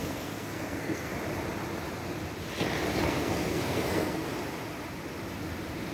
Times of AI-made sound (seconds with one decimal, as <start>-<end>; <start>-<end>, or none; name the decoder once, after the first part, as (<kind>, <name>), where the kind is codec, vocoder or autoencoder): 0.0-1.1 (codec, SNAC); 3.0-4.3